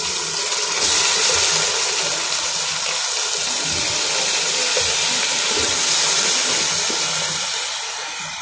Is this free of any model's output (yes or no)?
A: yes